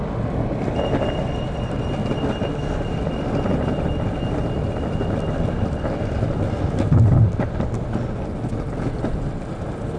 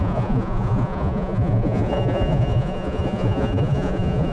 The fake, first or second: second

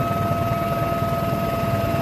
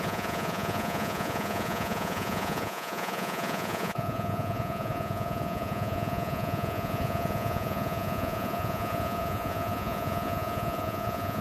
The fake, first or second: second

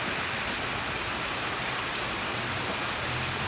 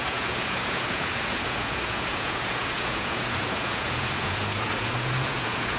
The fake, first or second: second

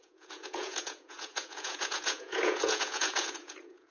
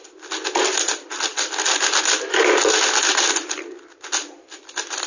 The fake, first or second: first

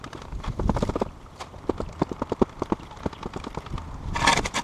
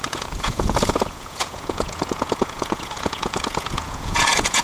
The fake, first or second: second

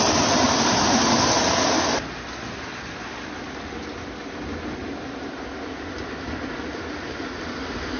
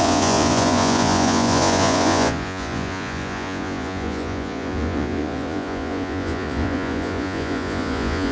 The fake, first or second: second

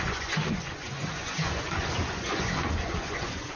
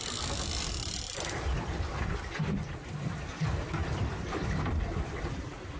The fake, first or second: first